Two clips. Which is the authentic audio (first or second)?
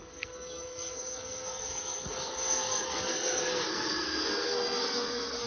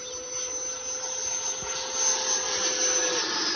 second